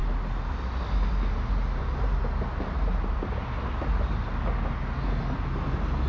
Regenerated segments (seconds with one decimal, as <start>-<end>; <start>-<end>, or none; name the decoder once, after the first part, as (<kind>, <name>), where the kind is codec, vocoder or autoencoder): none